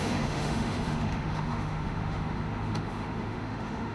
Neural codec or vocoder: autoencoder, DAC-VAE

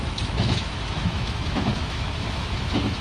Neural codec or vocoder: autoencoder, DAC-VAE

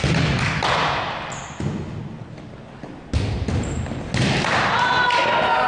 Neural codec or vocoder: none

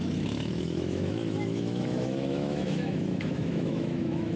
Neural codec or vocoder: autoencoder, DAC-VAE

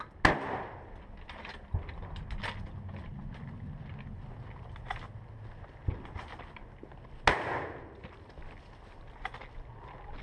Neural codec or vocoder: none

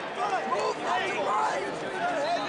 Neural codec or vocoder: none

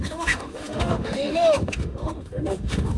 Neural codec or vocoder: autoencoder, DAC-VAE